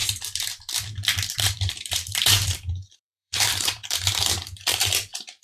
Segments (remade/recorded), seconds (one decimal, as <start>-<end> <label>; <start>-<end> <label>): 0.0-1.3 recorded; 1.3-5.4 remade